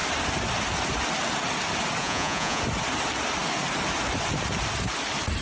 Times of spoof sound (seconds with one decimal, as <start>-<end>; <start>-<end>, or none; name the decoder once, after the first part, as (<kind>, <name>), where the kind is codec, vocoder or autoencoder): 2.0-2.6 (vocoder, Vocos)

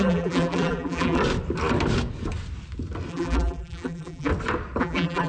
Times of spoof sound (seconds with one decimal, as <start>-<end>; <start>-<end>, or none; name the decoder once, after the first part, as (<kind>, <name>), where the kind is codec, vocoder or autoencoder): 0.0-1.2 (vocoder, BigVGAN v2); 3.1-4.3; 4.8-5.3

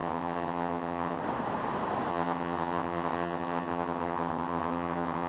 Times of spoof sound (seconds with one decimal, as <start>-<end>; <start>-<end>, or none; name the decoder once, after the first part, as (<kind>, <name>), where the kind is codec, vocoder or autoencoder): 0.0-1.2 (vocoder, HiFi-GAN); 2.1-5.3

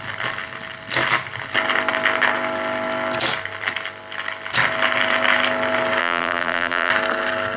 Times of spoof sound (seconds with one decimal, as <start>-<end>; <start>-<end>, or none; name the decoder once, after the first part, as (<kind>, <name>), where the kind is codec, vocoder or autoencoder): 6.0-6.9 (vocoder, BigVGAN v2)

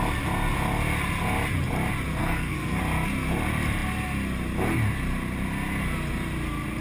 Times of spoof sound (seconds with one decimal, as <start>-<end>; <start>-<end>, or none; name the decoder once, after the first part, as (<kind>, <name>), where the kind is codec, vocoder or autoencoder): 2.2-2.8 (codec, SNAC)

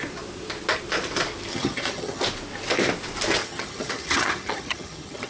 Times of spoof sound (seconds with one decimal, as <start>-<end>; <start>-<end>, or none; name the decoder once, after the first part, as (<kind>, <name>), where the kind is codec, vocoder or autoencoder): 1.5-2.2 (vocoder, HiFi-GAN); 3.4-5.3